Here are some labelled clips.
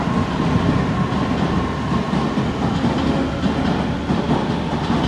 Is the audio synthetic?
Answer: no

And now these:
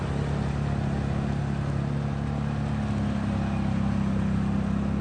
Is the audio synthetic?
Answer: no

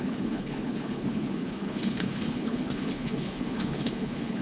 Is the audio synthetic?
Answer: yes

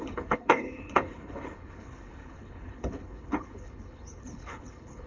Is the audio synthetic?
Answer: yes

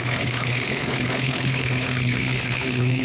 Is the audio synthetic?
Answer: yes